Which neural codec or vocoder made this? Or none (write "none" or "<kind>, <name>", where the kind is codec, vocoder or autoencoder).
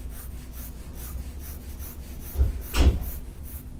none